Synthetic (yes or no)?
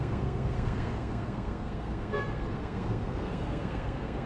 yes